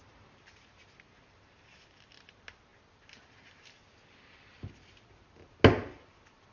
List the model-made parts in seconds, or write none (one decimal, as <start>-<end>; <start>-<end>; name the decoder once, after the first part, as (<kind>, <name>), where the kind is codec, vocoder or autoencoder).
none